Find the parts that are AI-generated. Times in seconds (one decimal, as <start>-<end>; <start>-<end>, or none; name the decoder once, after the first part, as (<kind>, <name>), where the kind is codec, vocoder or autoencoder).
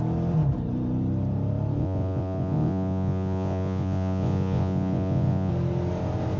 1.8-5.5 (vocoder, Vocos)